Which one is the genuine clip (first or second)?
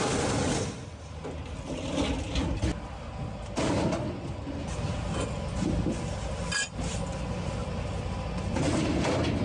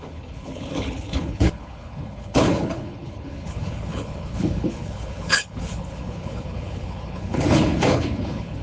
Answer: first